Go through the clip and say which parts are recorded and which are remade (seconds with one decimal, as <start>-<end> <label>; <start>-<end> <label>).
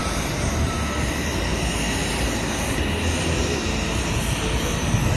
0.0-1.1 remade; 1.1-5.2 recorded